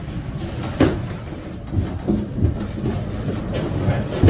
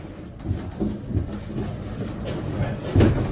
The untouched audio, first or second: second